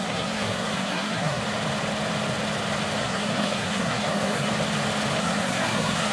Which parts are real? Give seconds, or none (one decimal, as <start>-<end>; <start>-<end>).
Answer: 1.4-3.0; 4.5-5.2